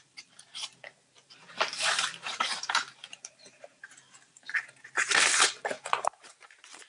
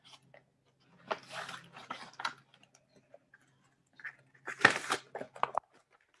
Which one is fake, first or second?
first